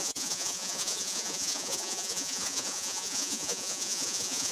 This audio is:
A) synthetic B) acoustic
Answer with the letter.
A